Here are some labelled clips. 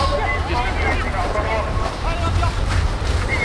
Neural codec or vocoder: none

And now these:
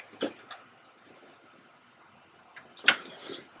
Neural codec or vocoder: none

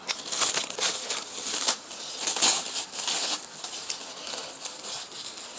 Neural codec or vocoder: none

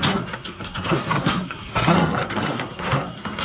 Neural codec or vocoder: codec, SNAC